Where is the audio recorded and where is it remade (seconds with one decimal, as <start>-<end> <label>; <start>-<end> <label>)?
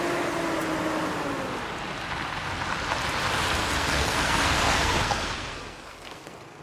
0.0-3.6 recorded; 3.6-6.6 remade